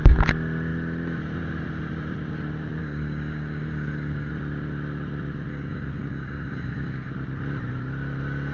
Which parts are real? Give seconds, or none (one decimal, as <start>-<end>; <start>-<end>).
0.0-2.8; 4.3-5.5; 7.1-8.5